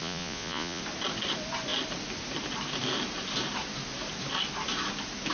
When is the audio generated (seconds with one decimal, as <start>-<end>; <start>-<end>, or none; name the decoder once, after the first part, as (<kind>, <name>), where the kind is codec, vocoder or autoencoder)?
0.0-0.8 (vocoder, Vocos)